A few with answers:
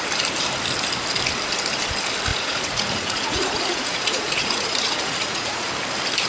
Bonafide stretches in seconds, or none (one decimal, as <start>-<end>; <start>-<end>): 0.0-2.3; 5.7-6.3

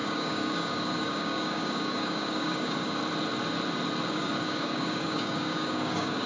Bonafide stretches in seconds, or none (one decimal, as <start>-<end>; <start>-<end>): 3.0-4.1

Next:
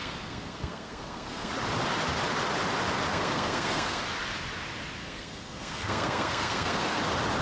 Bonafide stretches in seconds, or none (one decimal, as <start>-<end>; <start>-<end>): 1.5-3.1; 4.0-5.0; 7.0-7.4

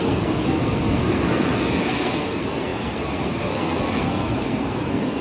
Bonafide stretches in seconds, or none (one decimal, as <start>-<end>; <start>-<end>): none

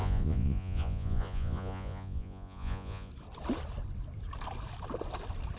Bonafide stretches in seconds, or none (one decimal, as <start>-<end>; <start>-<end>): 3.1-5.6